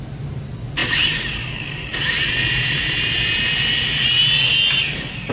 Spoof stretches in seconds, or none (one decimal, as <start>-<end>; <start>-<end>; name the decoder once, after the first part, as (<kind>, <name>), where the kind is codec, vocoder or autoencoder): none